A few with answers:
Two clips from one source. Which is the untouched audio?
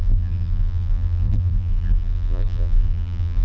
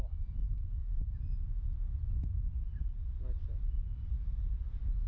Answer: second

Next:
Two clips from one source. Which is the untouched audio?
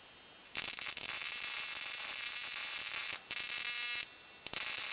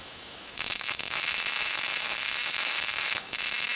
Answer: first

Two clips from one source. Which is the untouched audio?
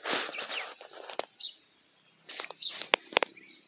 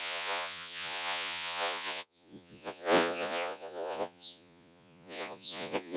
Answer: first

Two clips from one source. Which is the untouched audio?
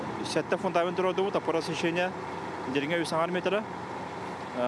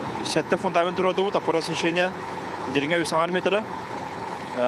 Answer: first